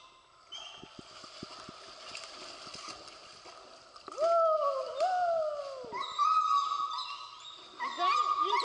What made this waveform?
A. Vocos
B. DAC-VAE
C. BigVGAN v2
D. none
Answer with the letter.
D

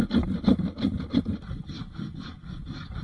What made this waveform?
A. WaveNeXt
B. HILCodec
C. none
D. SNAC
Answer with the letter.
C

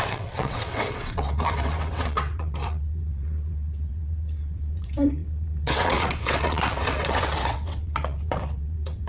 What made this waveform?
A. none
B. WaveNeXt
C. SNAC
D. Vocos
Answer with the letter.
B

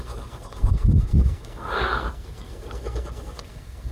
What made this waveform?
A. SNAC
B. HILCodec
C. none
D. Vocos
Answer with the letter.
A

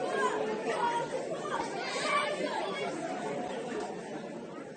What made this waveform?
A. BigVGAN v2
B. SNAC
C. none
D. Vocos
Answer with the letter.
C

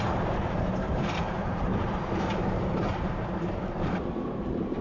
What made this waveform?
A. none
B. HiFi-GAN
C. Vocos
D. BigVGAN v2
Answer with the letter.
D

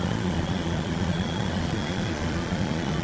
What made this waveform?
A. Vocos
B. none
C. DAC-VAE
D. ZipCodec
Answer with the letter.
A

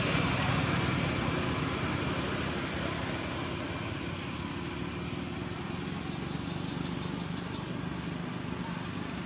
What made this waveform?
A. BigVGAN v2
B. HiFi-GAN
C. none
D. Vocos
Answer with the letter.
C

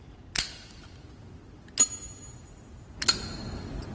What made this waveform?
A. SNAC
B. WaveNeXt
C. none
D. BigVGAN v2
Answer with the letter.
C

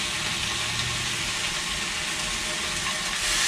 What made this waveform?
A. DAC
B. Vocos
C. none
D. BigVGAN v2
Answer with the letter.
C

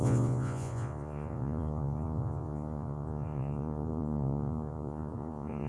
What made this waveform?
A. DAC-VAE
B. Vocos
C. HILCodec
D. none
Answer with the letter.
B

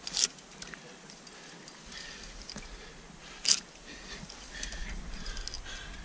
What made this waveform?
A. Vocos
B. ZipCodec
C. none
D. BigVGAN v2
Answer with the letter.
C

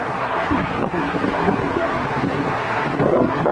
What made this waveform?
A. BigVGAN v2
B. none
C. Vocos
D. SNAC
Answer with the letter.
D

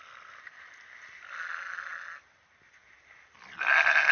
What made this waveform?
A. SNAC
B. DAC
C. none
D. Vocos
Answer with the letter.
C